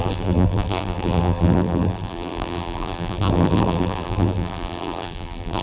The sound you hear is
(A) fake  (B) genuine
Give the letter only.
A